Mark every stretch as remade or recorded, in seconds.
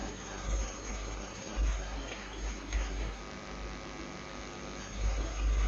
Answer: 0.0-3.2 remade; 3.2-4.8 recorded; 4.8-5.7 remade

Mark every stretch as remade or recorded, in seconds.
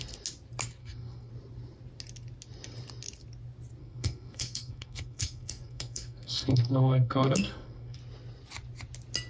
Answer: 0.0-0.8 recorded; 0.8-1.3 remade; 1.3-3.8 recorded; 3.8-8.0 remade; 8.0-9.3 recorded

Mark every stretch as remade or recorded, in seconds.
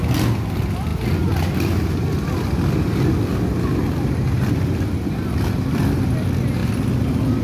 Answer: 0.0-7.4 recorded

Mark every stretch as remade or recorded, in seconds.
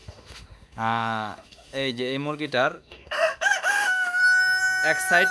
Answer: 0.0-4.2 remade; 4.2-5.3 recorded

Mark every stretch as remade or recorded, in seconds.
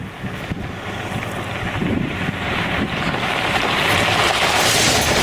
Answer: 0.0-1.8 recorded; 1.8-3.9 remade; 3.9-5.2 recorded